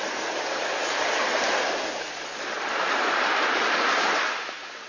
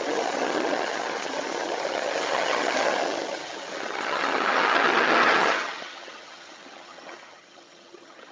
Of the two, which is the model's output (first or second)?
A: second